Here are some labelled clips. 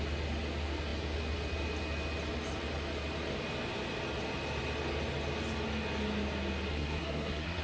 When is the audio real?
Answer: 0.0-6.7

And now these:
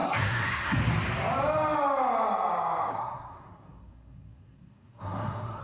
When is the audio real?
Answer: 0.8-2.9

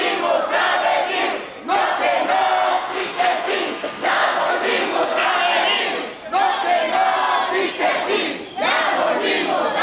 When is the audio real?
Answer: 0.0-2.7; 5.3-9.8

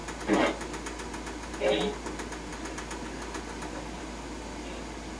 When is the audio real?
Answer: 0.0-5.2

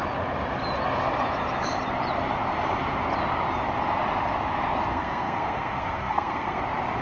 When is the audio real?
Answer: 0.0-4.9; 6.6-7.0

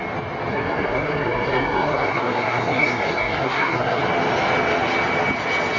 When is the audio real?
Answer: 0.0-0.5; 4.0-5.8

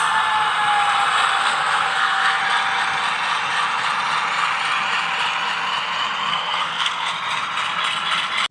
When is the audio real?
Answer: 0.0-1.4; 2.4-6.3; 7.1-8.5